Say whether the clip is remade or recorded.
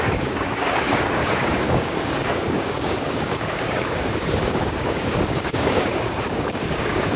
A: remade